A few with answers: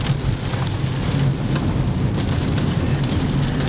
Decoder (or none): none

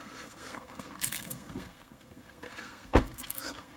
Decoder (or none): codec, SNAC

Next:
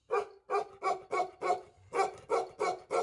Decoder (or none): none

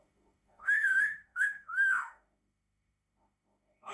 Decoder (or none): autoencoder, DAC-VAE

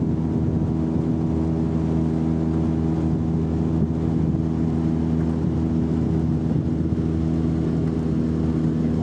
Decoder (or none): none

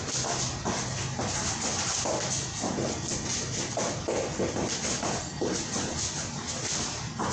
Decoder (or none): none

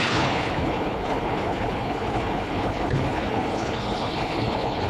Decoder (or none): codec, HILCodec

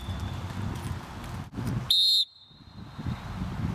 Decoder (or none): none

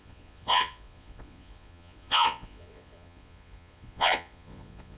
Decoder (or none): vocoder, Vocos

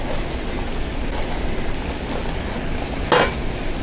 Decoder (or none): none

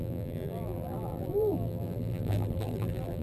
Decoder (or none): vocoder, BigVGAN v2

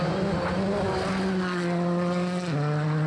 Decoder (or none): none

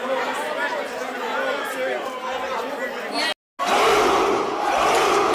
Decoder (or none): none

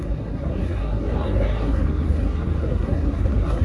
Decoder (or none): codec, SNAC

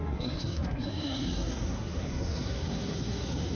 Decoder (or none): codec, SNAC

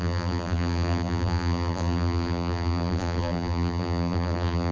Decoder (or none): vocoder, BigVGAN v2